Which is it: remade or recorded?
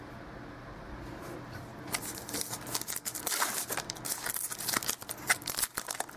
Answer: recorded